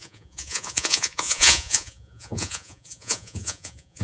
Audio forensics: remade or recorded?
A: remade